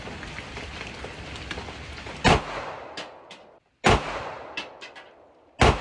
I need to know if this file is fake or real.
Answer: real